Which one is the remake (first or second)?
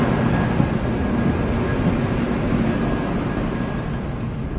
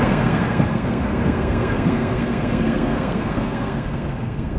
second